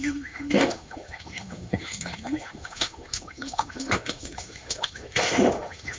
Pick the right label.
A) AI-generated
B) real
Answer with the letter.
A